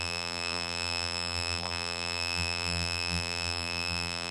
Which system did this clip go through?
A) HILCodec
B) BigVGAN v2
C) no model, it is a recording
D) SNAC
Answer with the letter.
B